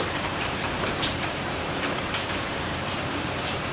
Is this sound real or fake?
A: fake